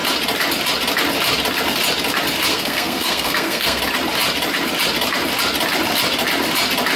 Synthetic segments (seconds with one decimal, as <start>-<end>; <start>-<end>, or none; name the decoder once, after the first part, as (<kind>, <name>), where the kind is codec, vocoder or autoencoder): 2.5-3.8 (codec, SNAC)